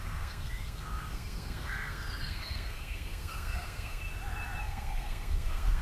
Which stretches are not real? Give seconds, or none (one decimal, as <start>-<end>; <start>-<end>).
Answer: 0.0-4.0; 4.6-5.8